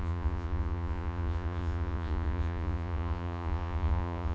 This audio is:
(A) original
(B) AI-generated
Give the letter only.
B